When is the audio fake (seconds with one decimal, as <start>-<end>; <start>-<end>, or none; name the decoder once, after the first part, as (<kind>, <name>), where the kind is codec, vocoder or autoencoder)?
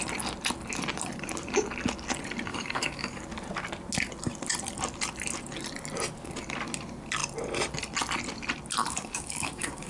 2.5-3.2 (codec, DAC); 8.8-9.9